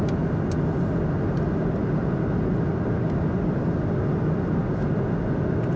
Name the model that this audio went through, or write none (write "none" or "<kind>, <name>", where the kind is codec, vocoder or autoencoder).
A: none